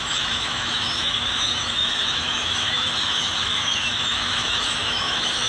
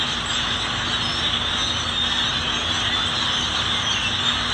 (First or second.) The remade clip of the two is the first